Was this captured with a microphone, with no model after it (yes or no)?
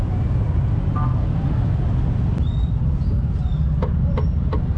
yes